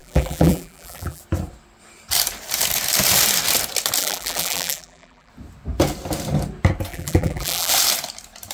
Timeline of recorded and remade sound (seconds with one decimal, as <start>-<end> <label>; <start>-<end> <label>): 0.0-1.2 remade; 1.2-4.0 recorded; 4.0-5.3 remade; 5.3-6.9 recorded; 6.9-7.7 remade; 7.7-8.5 recorded